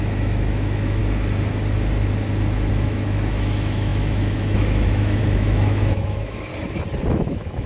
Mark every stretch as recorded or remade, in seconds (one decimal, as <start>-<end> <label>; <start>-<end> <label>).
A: 0.0-1.0 remade; 1.0-2.7 recorded; 2.7-6.5 remade; 6.5-7.1 recorded; 7.1-7.7 remade